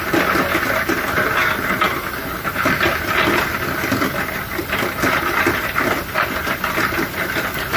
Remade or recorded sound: recorded